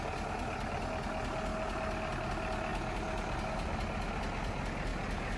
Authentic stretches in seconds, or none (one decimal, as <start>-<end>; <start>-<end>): 0.0-5.4

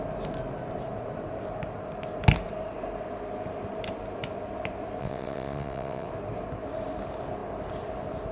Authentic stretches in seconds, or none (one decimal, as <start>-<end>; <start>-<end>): 0.0-5.0; 6.1-8.3

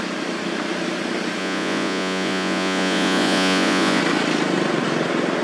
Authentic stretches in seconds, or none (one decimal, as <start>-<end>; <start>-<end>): 0.0-1.4; 4.0-5.4

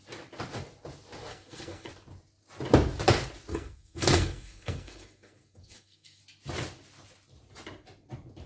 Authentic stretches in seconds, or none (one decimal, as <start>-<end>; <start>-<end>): 0.0-1.3; 1.9-3.5; 6.2-8.5

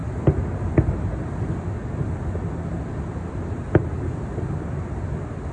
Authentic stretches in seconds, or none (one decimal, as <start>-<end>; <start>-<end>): 0.0-5.5

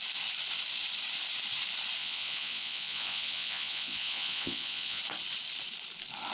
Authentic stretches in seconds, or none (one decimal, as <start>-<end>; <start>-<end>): 0.0-2.0; 5.0-6.3

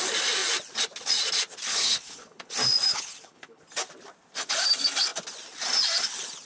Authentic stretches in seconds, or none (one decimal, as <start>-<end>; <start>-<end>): 0.0-1.7; 2.5-2.9; 3.6-6.5

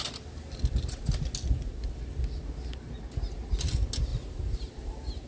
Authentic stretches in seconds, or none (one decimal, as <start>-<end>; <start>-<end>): 0.0-4.1